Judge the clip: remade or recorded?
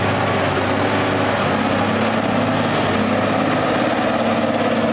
recorded